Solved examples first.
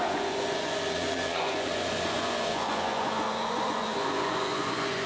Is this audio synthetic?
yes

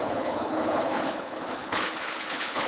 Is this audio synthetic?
yes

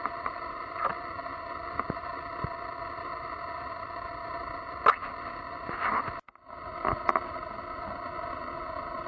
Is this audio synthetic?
no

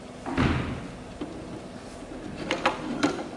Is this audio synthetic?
no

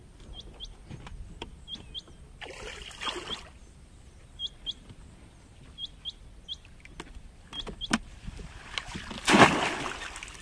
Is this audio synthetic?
no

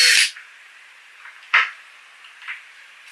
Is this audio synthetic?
no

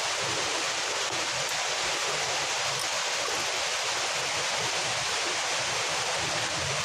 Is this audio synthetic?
no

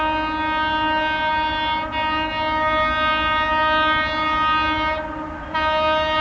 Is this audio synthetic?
no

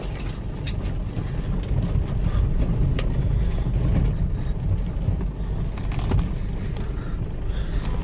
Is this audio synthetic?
no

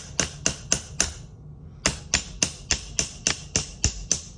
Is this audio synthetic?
no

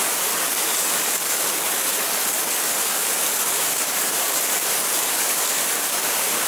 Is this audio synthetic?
yes